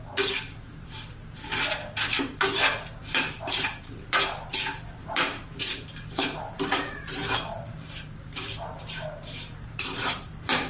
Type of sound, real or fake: fake